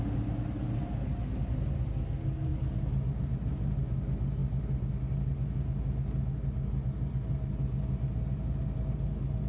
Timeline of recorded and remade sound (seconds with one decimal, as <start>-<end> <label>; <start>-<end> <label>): 0.0-9.5 recorded